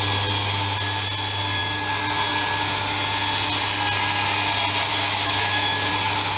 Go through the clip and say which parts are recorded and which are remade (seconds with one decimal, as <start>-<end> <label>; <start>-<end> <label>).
0.0-4.9 recorded; 4.9-5.9 remade; 5.9-6.4 recorded